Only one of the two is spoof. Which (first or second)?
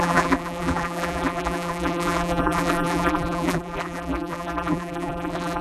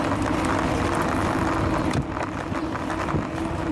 first